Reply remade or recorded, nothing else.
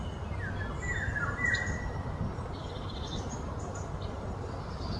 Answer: recorded